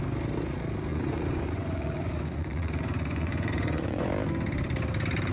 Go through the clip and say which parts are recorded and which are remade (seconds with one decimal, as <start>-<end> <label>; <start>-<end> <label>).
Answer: 0.0-0.9 recorded; 0.9-4.1 remade; 4.1-5.3 recorded